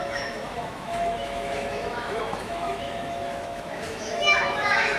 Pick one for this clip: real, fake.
fake